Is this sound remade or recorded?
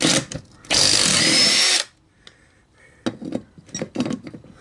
recorded